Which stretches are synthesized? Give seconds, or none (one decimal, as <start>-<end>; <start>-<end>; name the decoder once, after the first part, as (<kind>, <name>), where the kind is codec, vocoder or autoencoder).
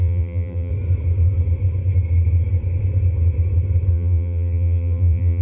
0.0-0.7 (vocoder, BigVGAN v2); 3.9-5.4